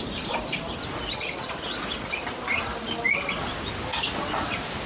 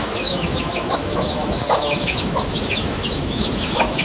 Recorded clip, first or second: first